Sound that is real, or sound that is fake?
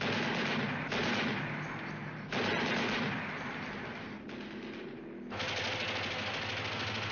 real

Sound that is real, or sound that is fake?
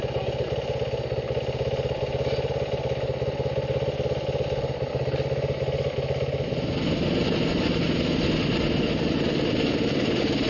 real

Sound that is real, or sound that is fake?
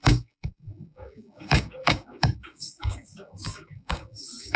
fake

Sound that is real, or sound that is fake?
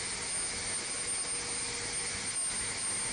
real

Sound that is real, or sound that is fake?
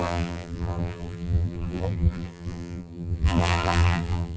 fake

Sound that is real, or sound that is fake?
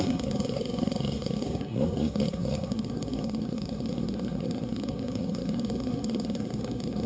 fake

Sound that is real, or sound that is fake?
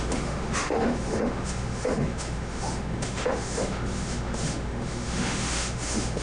fake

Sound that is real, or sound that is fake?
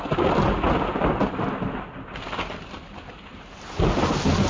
real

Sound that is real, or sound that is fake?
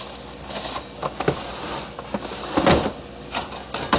real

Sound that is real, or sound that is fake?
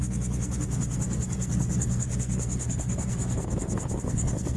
fake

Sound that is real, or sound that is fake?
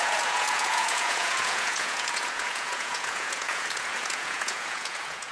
fake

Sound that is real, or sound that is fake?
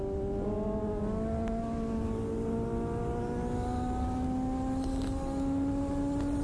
real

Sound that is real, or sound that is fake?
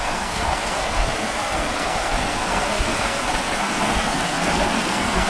fake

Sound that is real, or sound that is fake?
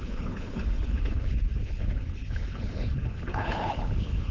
fake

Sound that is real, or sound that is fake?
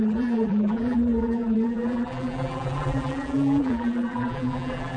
fake